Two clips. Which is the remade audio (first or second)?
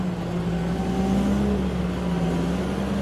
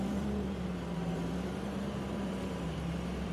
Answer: second